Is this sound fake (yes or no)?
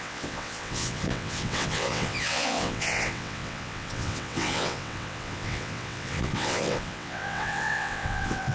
yes